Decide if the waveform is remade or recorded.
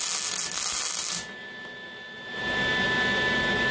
recorded